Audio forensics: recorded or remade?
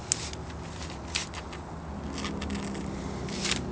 recorded